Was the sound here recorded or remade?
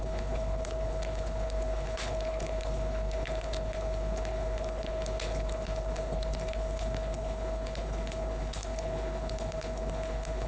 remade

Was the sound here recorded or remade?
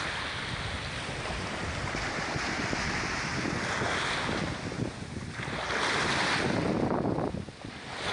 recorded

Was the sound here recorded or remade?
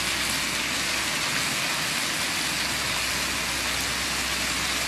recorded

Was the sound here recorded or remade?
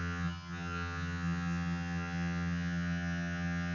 remade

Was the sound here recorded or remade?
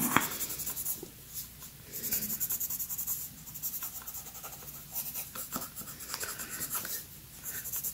recorded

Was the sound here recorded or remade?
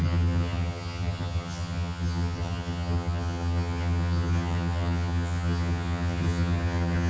remade